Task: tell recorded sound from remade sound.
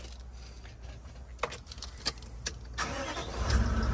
recorded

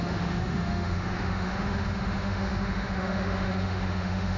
remade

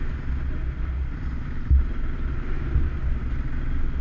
recorded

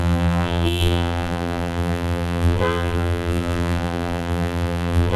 remade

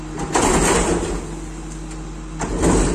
recorded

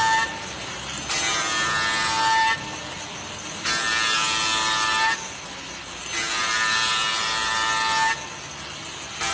recorded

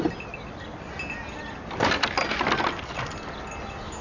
recorded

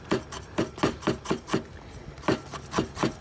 recorded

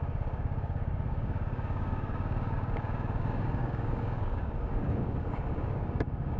remade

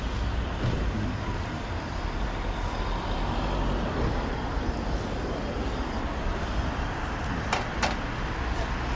recorded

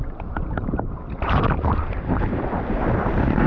remade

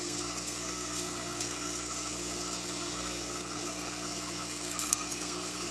remade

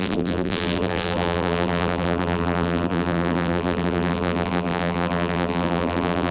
remade